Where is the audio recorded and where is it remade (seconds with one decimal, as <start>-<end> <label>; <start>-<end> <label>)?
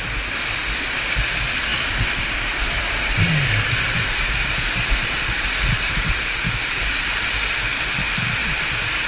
0.0-9.1 recorded